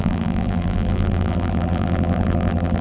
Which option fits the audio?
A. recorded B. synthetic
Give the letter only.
B